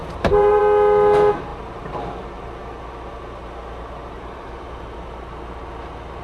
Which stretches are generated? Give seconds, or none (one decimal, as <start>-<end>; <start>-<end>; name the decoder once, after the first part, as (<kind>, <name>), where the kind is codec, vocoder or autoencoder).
0.0-0.6 (vocoder, BigVGAN v2); 1.5-2.0; 4.0-5.4